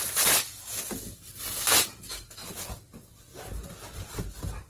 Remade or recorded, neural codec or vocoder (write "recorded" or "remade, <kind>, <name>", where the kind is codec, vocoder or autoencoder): recorded